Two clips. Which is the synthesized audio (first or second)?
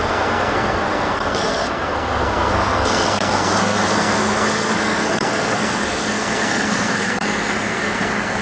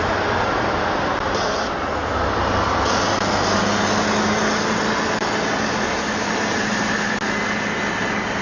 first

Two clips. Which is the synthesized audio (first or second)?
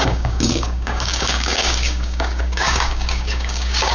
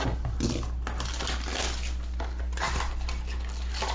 first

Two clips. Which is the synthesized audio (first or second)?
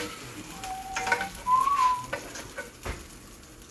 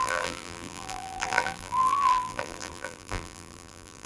second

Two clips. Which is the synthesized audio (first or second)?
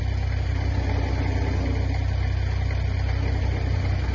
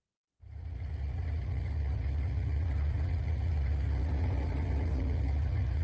second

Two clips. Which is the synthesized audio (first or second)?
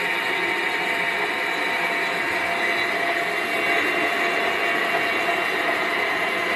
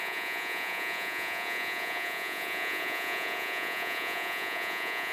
second